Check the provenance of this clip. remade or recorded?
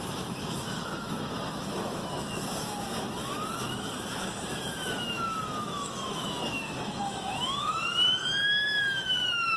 remade